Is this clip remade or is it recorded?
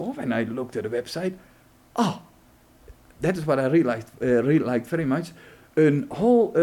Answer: recorded